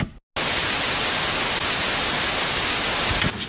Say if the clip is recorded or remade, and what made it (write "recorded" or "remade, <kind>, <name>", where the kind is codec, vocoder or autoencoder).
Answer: recorded